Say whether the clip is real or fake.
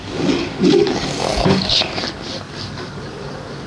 fake